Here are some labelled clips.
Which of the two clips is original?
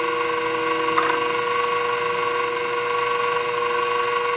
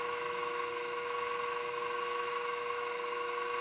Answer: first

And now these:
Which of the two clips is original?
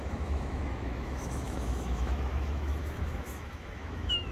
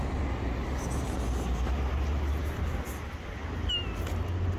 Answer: second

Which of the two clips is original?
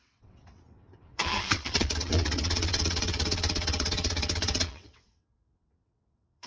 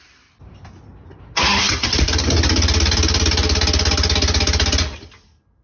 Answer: second